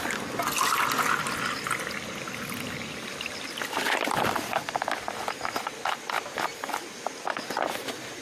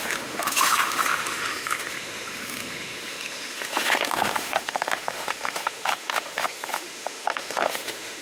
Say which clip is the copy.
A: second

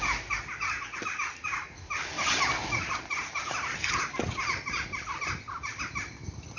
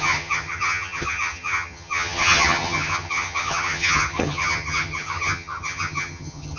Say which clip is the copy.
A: second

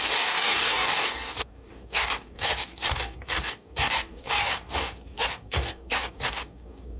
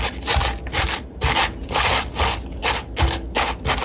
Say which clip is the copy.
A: first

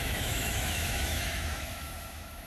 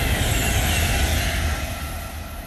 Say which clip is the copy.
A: first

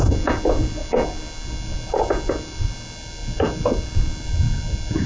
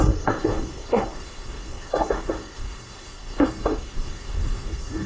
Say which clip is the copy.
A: second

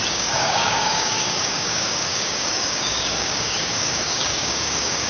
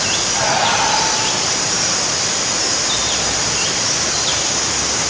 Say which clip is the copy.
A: first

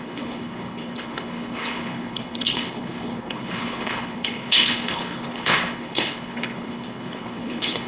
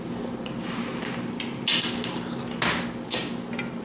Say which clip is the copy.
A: first